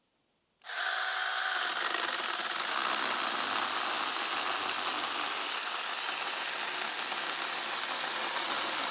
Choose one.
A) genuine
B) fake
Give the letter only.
A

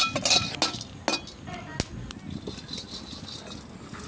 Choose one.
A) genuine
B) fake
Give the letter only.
A